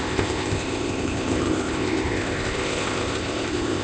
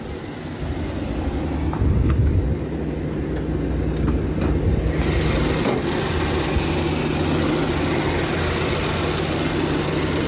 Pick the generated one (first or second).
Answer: first